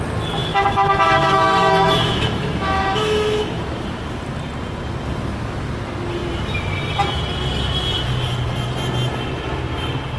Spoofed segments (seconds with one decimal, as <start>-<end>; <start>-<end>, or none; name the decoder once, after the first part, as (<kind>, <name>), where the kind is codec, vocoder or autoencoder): 0.4-3.6 (autoencoder, DAC-VAE)